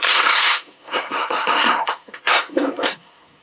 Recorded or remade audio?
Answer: remade